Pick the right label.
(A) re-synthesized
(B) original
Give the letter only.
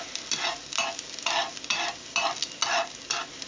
B